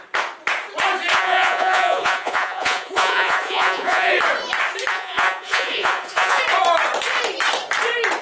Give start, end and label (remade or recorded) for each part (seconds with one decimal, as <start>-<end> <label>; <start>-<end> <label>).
0.0-1.1 recorded; 1.1-4.1 remade; 4.1-4.9 recorded; 4.9-6.4 remade; 6.4-8.2 recorded